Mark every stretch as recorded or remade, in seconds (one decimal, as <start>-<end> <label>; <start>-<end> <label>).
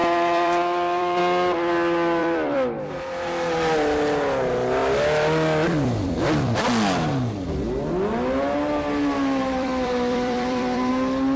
0.0-1.2 remade; 1.2-2.2 recorded; 2.2-2.9 remade; 2.9-4.8 recorded; 4.8-6.6 remade; 6.6-9.4 recorded; 9.4-10.9 remade; 10.9-11.4 recorded